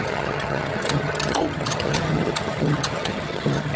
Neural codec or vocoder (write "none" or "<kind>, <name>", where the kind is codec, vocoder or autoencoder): vocoder, HiFi-GAN